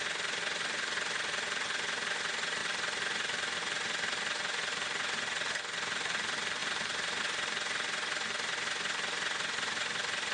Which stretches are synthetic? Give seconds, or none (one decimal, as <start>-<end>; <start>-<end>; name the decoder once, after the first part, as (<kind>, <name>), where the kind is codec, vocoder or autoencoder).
2.6-3.6 (vocoder, BigVGAN v2); 6.6-7.2